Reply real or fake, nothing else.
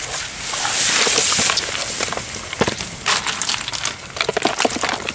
real